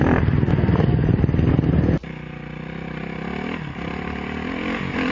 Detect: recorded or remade recorded